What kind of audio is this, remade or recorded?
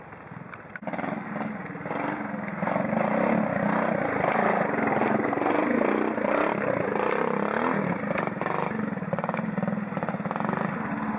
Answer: recorded